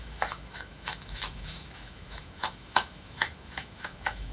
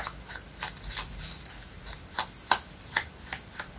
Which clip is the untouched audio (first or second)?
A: second